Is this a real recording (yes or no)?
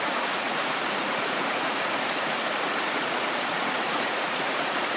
no